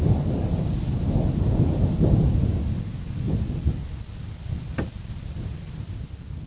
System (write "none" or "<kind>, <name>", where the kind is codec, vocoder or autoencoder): none